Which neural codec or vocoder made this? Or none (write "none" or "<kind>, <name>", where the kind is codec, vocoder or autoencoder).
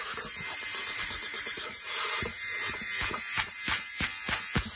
vocoder, BigVGAN v2